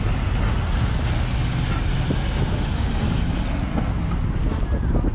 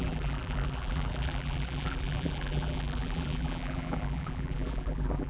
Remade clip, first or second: second